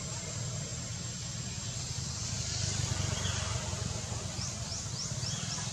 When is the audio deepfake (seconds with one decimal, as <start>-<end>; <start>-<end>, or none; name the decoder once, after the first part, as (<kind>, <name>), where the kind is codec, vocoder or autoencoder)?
none

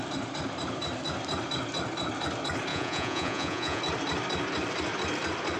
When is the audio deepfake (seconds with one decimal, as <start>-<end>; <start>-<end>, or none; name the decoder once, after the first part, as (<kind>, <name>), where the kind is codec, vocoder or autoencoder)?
2.7-3.8 (vocoder, Vocos)

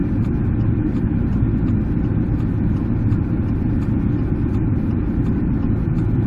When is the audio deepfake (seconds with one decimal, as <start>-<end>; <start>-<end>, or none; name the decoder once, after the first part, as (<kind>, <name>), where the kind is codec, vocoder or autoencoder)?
none

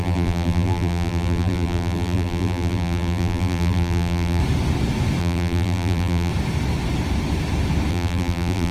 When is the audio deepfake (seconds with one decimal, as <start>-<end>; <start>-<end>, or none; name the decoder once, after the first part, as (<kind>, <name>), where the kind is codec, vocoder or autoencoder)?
0.0-4.4 (vocoder, BigVGAN v2); 5.2-6.3; 7.9-8.7

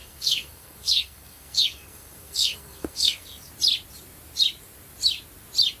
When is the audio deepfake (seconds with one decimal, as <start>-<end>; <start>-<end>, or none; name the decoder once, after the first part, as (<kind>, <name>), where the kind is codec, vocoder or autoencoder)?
0.0-3.5 (codec, SNAC)